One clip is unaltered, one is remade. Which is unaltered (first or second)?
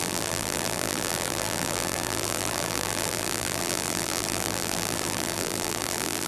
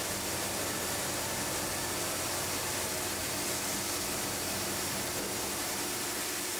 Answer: second